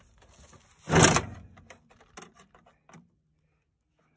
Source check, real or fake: real